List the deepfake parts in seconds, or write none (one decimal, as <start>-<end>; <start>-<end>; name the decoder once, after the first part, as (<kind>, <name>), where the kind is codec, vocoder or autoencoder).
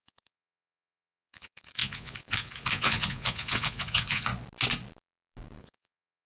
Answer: 0.0-4.3 (vocoder, Vocos); 5.6-6.3